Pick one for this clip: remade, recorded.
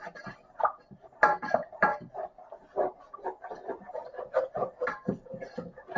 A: recorded